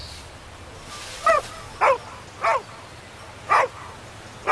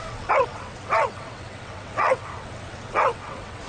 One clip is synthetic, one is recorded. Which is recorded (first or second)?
first